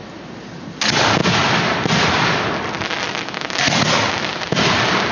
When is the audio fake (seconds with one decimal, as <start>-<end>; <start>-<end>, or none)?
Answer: none